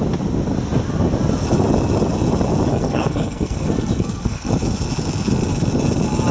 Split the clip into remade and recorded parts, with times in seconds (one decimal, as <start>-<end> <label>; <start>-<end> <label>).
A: 0.0-2.7 recorded; 2.7-4.5 remade; 4.5-6.3 recorded